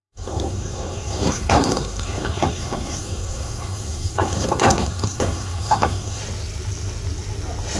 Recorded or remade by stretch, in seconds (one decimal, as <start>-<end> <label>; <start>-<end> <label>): 0.0-6.2 remade; 6.2-7.8 recorded